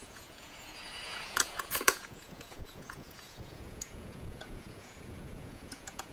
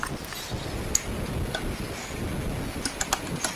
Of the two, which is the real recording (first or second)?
second